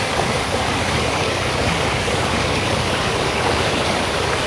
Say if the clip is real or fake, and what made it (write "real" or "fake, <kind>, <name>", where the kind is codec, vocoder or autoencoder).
fake, codec, DAC